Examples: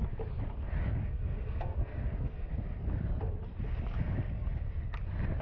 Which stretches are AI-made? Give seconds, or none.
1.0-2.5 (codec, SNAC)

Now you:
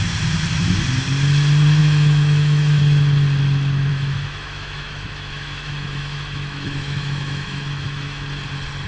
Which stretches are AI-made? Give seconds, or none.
1.8-2.8 (autoencoder, DAC-VAE); 3.9-8.2

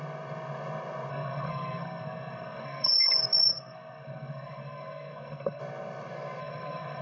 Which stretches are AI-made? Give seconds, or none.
1.1-3.1 (codec, SNAC); 3.5-5.6; 6.4-7.0